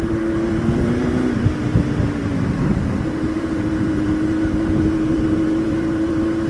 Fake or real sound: fake